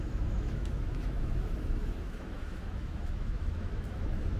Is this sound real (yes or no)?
no